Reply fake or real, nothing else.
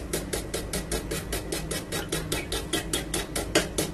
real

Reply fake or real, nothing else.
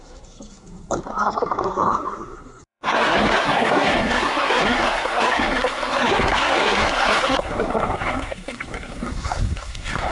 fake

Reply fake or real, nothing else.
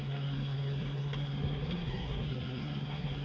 fake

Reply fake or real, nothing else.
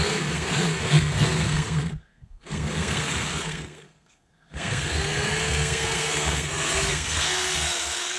fake